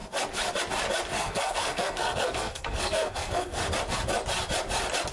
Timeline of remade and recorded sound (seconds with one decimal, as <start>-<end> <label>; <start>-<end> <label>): 0.0-1.1 recorded; 1.1-3.6 remade; 3.6-5.1 recorded